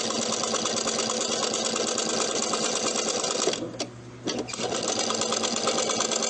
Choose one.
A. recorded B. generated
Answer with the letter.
A